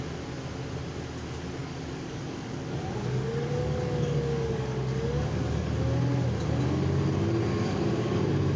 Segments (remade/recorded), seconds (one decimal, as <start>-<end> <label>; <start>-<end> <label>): 0.0-1.6 recorded; 1.6-5.8 remade; 5.8-7.5 recorded; 7.5-8.2 remade; 8.2-8.6 recorded